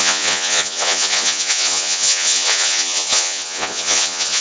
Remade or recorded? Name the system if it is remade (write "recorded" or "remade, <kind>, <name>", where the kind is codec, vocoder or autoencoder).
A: remade, vocoder, Vocos